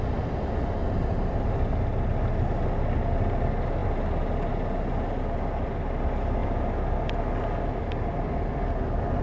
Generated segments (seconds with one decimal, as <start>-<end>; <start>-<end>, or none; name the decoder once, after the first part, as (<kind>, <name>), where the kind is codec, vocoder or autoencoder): 0.8-1.5 (vocoder, BigVGAN v2)